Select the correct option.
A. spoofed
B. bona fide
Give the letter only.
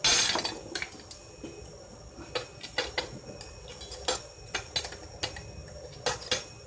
B